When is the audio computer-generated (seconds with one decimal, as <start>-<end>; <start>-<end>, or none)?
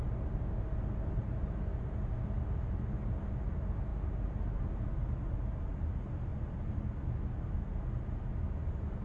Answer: none